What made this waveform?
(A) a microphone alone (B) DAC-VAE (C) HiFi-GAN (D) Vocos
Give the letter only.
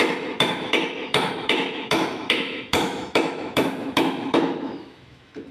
B